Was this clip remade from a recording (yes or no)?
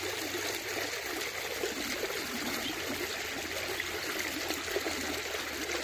no